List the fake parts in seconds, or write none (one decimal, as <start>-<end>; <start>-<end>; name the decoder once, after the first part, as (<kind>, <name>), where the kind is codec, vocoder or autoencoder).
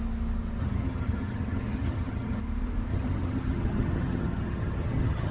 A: 0.6-2.4 (vocoder, HiFi-GAN); 2.9-5.3